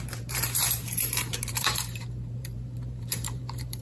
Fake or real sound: fake